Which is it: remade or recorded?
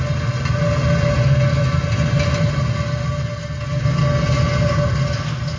recorded